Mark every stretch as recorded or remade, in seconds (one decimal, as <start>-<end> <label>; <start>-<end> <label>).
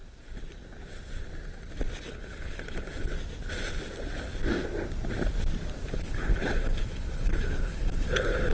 0.0-2.1 recorded; 2.1-3.1 remade; 3.1-5.9 recorded; 5.9-8.5 remade